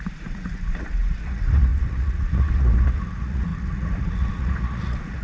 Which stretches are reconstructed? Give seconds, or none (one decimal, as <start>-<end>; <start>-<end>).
0.0-5.2